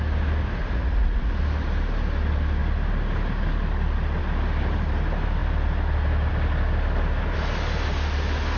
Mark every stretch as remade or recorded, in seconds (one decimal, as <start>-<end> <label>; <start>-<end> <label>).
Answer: 0.0-0.6 recorded; 0.6-1.3 remade; 1.3-8.6 recorded